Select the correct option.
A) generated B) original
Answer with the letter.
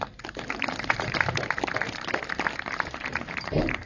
A